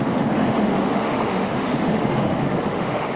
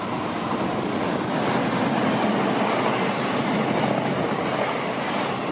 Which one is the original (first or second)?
second